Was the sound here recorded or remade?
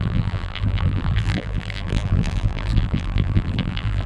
remade